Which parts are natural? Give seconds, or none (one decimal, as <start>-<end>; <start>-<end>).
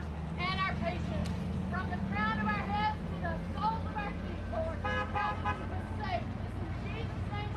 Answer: 0.0-7.6